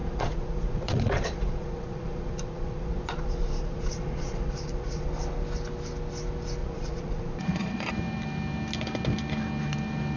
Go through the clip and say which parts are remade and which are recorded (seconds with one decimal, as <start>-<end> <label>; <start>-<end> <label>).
0.0-5.1 remade; 5.1-6.6 recorded; 6.6-7.9 remade; 7.9-10.2 recorded